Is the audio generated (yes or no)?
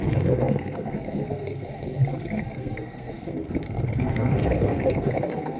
yes